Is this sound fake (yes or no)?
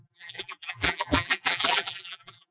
yes